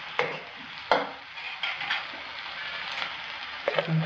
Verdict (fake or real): real